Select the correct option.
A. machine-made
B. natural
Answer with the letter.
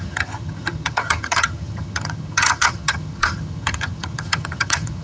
A